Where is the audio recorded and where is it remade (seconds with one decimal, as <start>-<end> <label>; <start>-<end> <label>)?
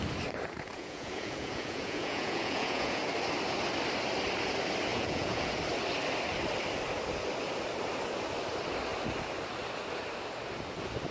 0.0-0.7 recorded; 0.7-3.0 remade; 3.0-4.9 recorded; 4.9-5.6 remade; 5.6-11.1 recorded